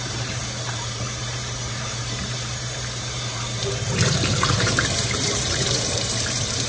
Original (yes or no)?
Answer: no